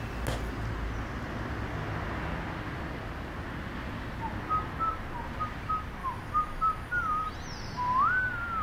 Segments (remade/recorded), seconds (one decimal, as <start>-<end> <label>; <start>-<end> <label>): 0.0-6.0 recorded; 6.0-7.3 remade; 7.3-8.6 recorded